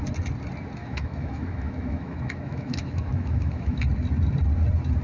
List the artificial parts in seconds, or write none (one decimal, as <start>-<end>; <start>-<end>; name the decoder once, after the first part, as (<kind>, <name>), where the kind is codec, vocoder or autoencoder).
0.8-3.8 (autoencoder, DAC-VAE)